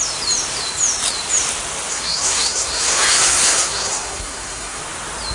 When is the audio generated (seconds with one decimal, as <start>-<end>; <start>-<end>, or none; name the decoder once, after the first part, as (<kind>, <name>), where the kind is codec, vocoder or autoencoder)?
1.9-4.8 (codec, SNAC)